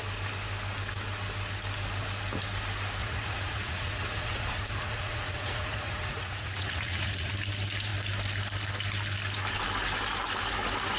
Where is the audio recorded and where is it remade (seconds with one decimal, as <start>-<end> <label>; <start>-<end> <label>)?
0.0-3.0 recorded; 3.0-7.3 remade; 7.3-11.0 recorded